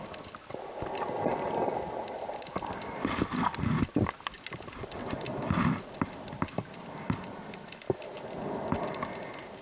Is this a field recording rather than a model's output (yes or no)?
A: yes